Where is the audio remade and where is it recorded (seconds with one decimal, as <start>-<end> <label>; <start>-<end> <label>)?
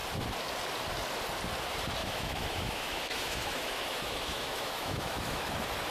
0.0-2.0 recorded; 2.0-5.5 remade; 5.5-5.9 recorded